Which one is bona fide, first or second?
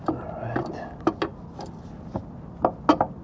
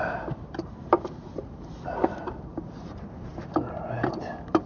first